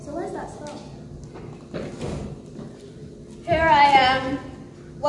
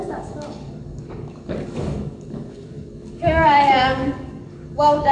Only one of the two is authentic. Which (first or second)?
first